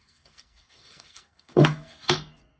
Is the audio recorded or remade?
remade